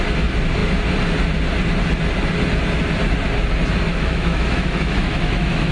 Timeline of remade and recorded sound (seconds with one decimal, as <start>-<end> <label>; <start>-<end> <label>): 0.0-3.9 recorded; 3.9-5.7 remade